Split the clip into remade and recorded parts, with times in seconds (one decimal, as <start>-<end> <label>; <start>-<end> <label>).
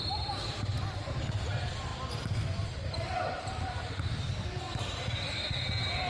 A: 0.0-6.1 recorded